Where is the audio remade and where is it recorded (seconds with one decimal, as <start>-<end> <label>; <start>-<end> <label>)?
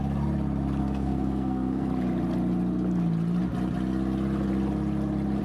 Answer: 0.0-0.8 recorded; 0.8-1.9 remade; 1.9-5.4 recorded